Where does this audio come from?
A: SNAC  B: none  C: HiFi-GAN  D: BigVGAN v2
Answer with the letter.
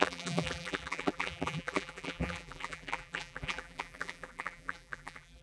D